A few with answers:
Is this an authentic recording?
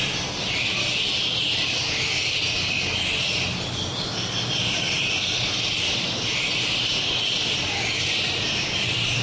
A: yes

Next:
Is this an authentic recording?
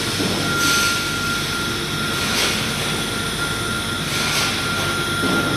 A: yes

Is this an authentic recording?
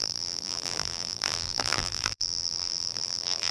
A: no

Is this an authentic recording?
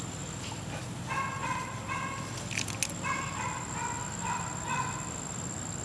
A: yes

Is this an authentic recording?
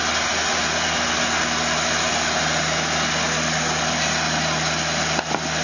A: yes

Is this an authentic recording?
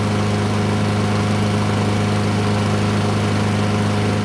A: yes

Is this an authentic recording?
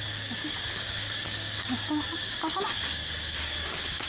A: no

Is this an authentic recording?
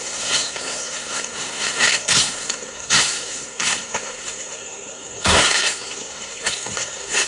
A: no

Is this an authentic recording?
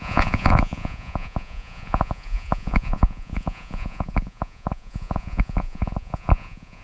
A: no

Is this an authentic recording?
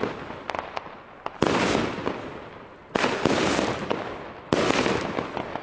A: yes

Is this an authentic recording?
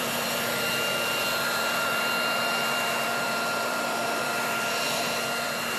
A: no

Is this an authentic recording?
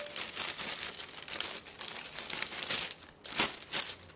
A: yes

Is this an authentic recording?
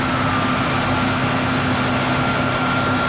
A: yes